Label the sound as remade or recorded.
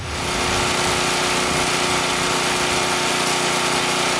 recorded